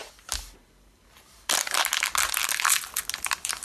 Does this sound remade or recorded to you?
recorded